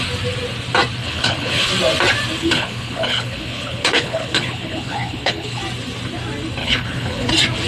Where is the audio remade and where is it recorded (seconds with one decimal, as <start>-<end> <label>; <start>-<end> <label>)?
0.0-1.0 recorded; 1.0-1.7 remade; 1.7-2.4 recorded; 2.4-5.6 remade; 5.6-6.6 recorded; 6.6-7.3 remade; 7.3-7.7 recorded